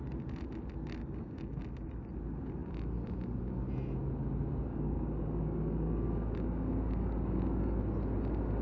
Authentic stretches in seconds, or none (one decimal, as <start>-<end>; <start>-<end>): 0.0-1.0; 1.6-4.7; 7.8-8.6